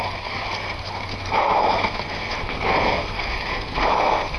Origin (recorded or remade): remade